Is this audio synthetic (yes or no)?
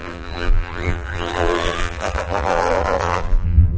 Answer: yes